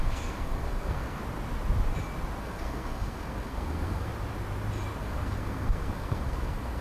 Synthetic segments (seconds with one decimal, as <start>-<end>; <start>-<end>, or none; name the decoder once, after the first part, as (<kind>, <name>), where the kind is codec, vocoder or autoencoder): 0.0-1.2 (codec, SNAC); 2.4-4.1; 5.0-6.8

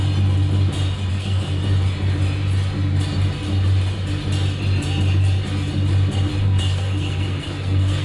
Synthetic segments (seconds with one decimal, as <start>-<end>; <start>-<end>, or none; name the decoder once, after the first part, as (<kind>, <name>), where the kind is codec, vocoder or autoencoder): 1.1-1.6 (codec, SNAC); 6.4-8.0